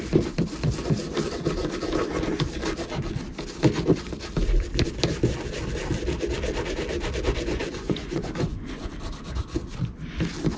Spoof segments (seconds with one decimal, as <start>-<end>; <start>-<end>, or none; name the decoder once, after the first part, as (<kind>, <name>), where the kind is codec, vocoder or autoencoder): 7.5-8.9 (vocoder, Vocos)